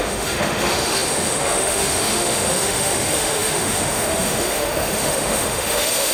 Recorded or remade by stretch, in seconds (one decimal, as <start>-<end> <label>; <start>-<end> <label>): 0.0-6.1 remade